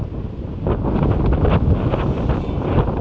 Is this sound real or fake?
real